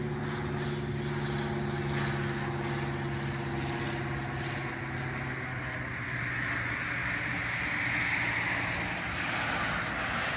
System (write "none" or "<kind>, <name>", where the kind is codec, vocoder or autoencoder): none